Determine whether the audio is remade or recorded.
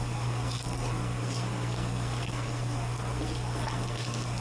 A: remade